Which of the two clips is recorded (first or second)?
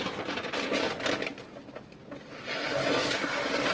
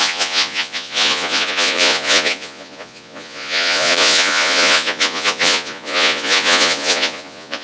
first